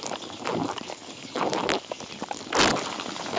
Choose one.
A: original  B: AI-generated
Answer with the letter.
A